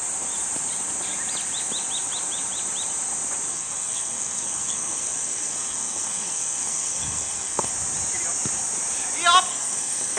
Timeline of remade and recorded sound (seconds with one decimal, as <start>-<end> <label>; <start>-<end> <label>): 0.0-3.5 recorded; 3.5-7.7 remade; 7.7-9.5 recorded; 9.5-10.2 remade